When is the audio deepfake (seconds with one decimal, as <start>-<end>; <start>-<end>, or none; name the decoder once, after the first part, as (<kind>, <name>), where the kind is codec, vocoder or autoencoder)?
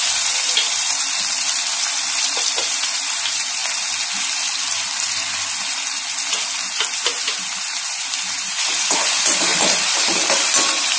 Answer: 0.0-3.6 (vocoder, BigVGAN v2); 7.6-11.0